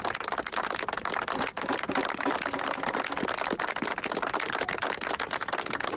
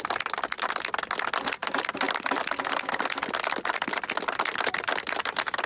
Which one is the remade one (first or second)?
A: first